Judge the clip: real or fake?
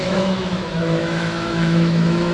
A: fake